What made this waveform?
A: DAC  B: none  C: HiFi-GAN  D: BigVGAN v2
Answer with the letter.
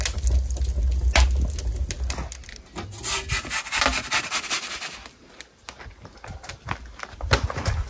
B